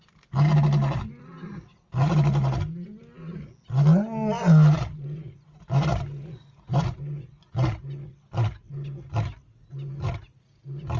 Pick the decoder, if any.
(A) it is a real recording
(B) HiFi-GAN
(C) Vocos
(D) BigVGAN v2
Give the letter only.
A